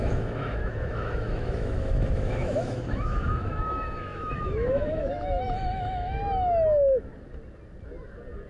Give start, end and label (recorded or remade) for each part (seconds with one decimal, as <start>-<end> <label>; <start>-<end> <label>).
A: 0.0-7.1 remade; 7.1-8.5 recorded